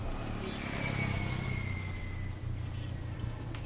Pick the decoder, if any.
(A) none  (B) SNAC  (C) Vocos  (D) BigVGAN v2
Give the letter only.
A